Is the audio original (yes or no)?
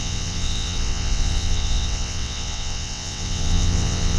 no